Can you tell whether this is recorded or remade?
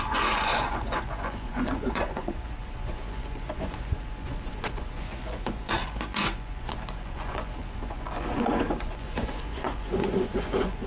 remade